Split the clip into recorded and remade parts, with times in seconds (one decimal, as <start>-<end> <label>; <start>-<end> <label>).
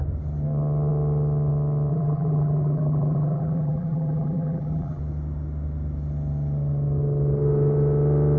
0.0-1.9 recorded; 1.9-5.0 remade; 5.0-8.4 recorded